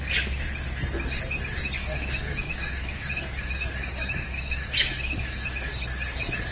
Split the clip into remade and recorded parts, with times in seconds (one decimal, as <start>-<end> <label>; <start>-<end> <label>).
0.0-1.8 recorded; 1.8-5.7 remade; 5.7-6.5 recorded